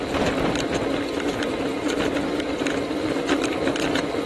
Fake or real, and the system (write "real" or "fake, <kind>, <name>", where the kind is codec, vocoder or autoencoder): real